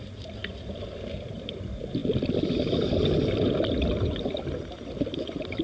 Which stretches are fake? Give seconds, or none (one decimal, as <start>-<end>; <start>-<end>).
none

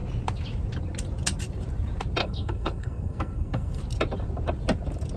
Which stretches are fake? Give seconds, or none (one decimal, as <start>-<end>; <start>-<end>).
2.2-3.8

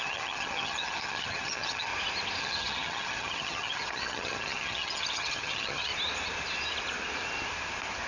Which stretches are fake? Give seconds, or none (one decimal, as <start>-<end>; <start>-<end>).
0.0-1.9; 2.4-5.9